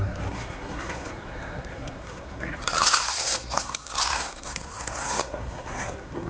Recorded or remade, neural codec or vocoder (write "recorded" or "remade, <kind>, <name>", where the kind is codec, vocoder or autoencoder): remade, codec, SNAC